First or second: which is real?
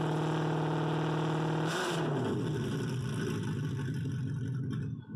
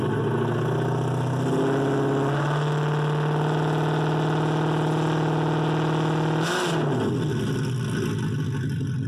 second